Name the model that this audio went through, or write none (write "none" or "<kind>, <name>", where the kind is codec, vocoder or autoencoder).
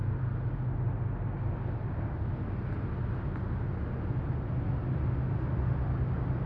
none